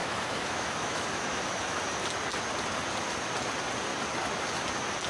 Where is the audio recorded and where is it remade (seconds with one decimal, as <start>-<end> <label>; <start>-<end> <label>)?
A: 0.0-1.8 remade; 1.8-5.1 recorded